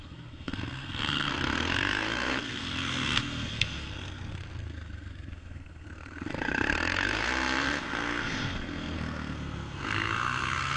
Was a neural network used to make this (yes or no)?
yes